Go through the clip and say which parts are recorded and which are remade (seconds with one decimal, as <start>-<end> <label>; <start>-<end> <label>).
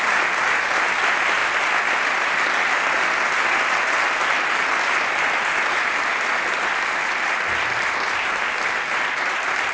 0.0-9.7 recorded